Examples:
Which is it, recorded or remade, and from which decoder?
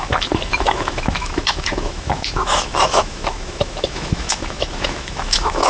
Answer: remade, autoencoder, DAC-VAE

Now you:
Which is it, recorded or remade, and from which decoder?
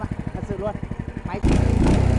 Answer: recorded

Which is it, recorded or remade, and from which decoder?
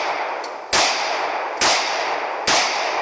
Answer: recorded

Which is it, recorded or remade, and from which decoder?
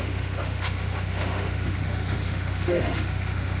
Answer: remade, autoencoder, DAC-VAE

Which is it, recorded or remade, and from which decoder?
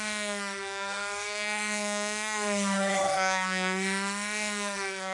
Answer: remade, autoencoder, DAC-VAE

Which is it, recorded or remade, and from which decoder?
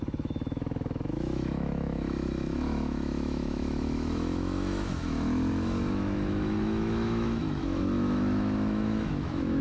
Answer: remade, autoencoder, DAC-VAE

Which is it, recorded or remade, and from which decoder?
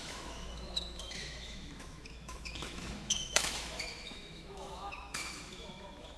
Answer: remade, autoencoder, DAC-VAE